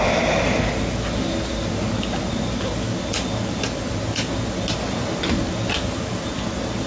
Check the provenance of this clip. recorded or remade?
recorded